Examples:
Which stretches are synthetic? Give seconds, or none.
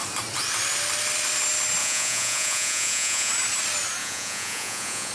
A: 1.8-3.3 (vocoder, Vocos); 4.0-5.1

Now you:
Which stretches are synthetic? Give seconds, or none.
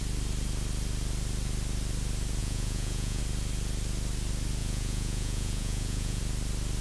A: 2.4-3.2 (vocoder, Vocos); 4.6-6.2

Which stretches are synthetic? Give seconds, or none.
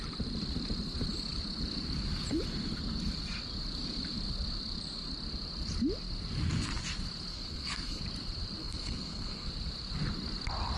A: 7.3-8.0 (codec, SNAC); 8.6-9.5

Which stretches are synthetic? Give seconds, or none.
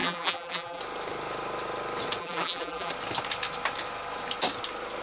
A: 0.0-0.8 (vocoder, BigVGAN v2); 2.2-2.9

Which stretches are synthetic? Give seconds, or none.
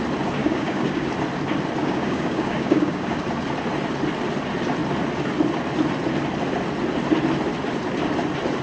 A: 0.4-1.1 (codec, DAC); 1.8-3.2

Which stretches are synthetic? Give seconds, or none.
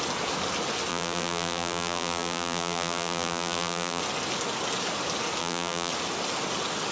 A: 0.9-4.0 (vocoder, BigVGAN v2); 5.4-5.9